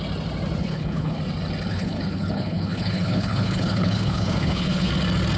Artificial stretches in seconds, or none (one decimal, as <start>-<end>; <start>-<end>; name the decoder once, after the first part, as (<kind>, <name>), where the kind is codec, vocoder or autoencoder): 0.6-1.2 (codec, HILCodec); 1.7-4.9